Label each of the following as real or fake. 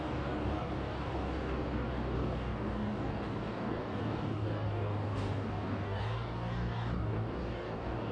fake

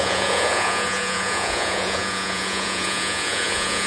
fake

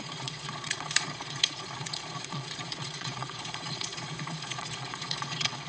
fake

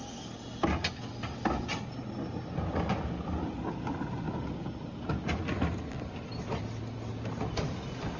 real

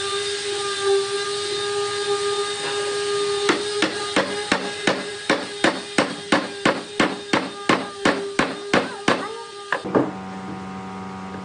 real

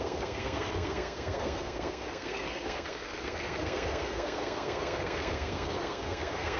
fake